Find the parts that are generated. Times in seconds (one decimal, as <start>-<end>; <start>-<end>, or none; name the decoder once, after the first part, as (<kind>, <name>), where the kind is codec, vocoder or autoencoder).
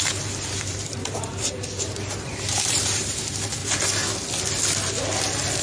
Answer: 0.0-3.6 (vocoder, BigVGAN v2)